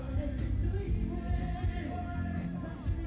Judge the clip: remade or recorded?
recorded